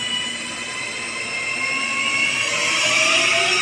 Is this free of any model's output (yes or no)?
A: yes